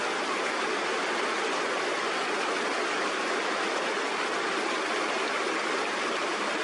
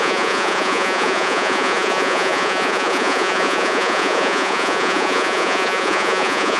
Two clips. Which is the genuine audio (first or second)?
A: first